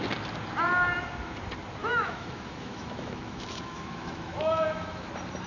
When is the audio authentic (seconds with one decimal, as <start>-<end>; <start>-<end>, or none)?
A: 0.0-1.8; 5.1-5.5